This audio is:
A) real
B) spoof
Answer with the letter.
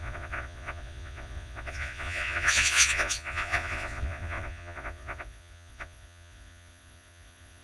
B